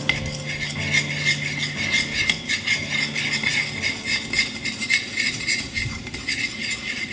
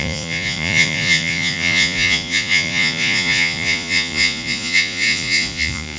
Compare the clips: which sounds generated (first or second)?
second